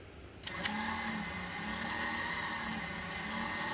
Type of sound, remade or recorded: recorded